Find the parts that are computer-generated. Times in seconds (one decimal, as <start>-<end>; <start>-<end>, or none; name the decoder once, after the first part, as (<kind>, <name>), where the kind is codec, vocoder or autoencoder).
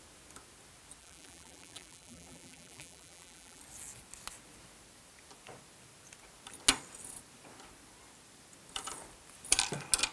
1.0-3.6 (vocoder, BigVGAN v2)